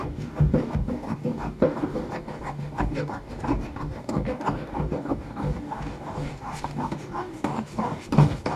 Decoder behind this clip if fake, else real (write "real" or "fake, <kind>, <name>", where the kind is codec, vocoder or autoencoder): fake, codec, DAC